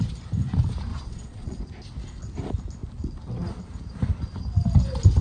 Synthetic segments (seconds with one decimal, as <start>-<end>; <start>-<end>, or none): 0.9-1.6